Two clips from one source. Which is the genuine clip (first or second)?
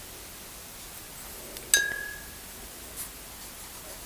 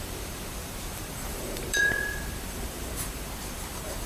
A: first